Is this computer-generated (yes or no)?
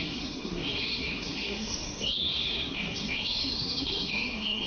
yes